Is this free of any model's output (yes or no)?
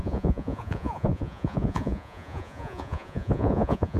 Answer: no